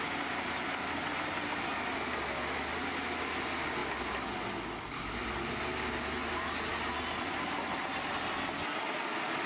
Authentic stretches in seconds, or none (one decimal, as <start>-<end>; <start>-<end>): 0.0-9.5